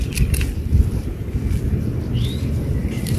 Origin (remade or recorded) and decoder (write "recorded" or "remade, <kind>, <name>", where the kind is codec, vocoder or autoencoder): recorded